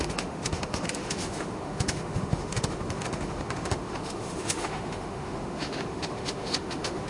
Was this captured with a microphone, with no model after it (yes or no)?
no